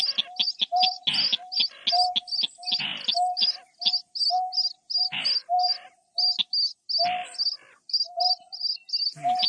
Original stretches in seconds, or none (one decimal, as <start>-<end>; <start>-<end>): 0.0-9.5